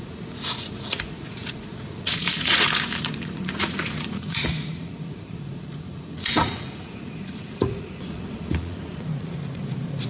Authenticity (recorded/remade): remade